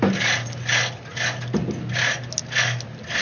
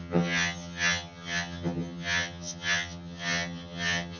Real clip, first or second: first